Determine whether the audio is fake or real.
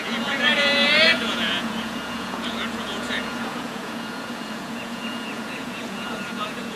fake